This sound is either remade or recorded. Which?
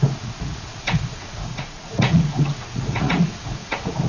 remade